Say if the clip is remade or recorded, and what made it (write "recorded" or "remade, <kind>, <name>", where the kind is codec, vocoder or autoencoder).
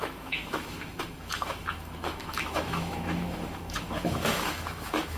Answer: remade, autoencoder, DAC-VAE